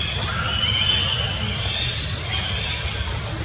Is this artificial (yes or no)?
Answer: no